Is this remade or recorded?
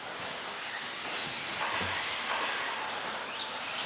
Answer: recorded